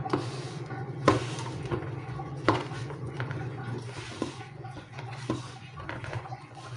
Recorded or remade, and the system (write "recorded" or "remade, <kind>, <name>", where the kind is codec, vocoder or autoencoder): remade, vocoder, Vocos